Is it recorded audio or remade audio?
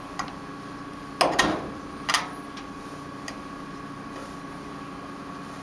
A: recorded